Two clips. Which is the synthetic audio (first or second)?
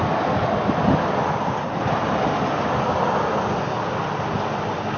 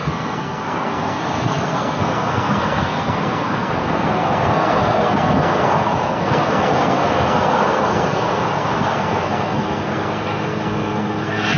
second